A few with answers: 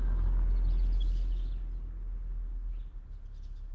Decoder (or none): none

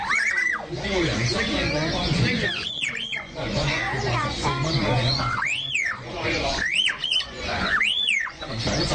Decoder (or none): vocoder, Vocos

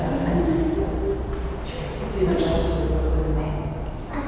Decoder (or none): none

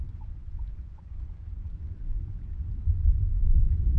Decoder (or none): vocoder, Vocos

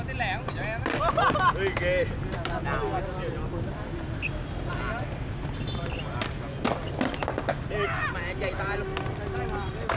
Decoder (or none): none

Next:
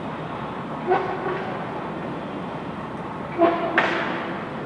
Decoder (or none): none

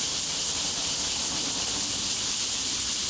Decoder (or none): none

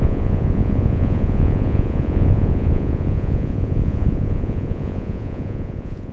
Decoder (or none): vocoder, Vocos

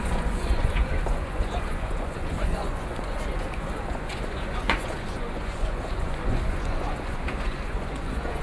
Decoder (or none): vocoder, Vocos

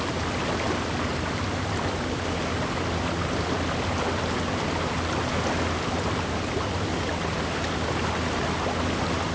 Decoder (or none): none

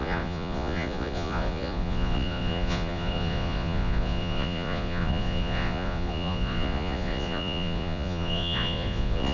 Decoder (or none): vocoder, Vocos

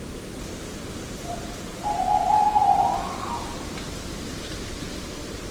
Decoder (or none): none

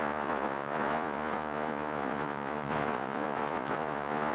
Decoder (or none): vocoder, Vocos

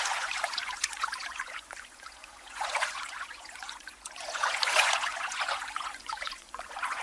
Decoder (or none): vocoder, Vocos